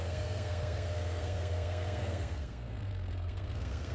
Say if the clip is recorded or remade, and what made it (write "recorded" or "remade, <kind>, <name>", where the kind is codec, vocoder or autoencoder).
remade, codec, SNAC